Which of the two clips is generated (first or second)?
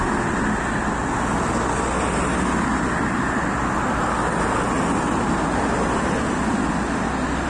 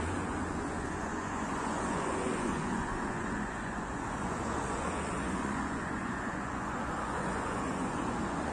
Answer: second